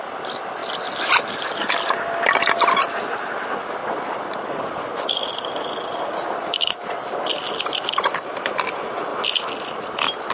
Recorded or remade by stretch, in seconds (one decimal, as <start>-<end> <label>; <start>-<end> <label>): 0.0-10.3 recorded